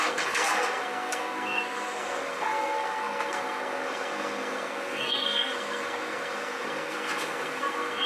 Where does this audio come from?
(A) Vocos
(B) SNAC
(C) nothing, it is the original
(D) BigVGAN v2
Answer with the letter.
B